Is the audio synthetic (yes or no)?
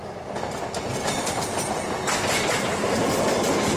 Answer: no